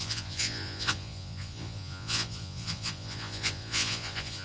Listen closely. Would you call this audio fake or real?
fake